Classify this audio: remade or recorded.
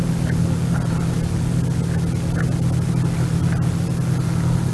recorded